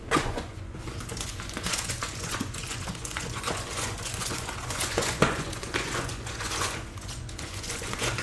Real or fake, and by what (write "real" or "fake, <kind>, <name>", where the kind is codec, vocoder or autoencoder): fake, vocoder, Vocos